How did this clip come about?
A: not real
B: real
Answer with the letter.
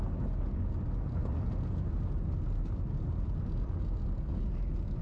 B